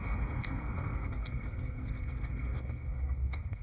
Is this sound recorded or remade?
remade